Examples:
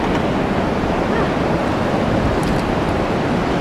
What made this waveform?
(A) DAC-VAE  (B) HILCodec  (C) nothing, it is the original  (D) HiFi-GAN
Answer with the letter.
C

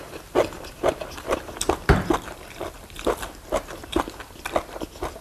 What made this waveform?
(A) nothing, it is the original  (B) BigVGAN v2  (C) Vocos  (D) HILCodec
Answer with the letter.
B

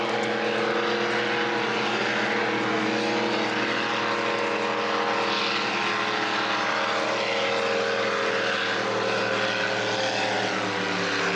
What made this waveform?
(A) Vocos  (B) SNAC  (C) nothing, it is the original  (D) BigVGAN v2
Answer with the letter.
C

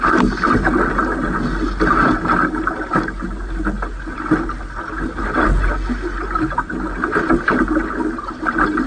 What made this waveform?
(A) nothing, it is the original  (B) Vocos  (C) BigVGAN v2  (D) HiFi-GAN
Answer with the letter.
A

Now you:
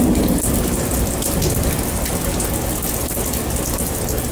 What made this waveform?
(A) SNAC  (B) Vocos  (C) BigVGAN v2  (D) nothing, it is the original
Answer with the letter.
D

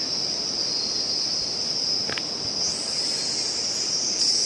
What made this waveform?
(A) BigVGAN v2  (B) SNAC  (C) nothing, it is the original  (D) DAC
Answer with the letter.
C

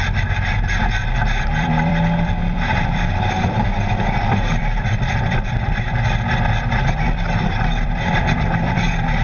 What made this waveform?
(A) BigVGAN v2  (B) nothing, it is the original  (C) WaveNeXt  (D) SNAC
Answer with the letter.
A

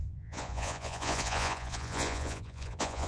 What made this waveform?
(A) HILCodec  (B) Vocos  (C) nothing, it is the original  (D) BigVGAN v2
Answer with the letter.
B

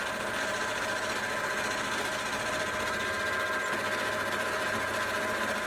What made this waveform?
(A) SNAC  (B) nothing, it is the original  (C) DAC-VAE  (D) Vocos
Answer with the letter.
B